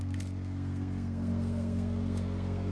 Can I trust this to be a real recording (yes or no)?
no